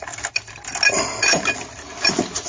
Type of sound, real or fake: real